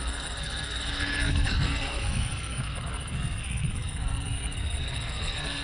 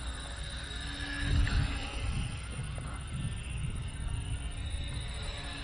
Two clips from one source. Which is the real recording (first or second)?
second